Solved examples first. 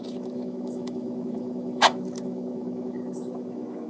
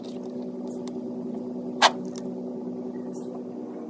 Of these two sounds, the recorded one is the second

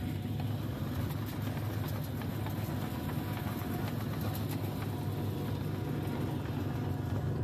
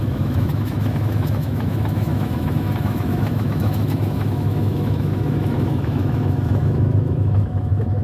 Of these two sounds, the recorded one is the first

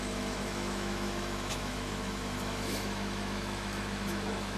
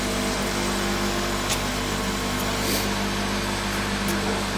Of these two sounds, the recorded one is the second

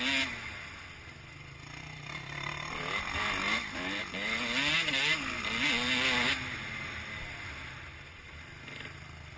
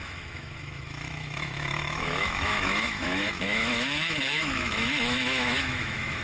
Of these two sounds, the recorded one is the first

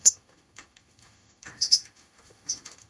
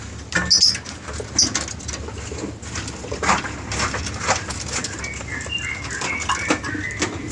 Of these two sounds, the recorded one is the second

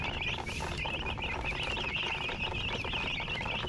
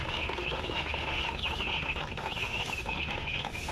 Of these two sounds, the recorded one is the first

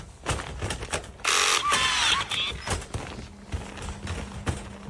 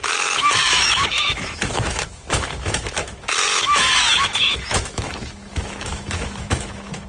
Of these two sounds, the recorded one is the first